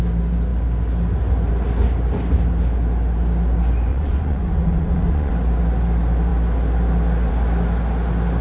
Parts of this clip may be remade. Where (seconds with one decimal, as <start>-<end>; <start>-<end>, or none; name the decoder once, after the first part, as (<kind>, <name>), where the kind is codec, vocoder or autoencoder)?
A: 3.9-5.3 (vocoder, Vocos)